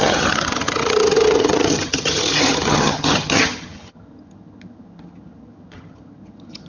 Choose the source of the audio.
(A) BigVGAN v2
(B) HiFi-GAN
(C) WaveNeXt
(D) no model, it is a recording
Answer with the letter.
B